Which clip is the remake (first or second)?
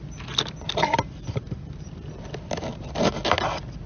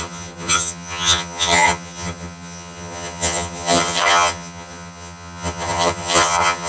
second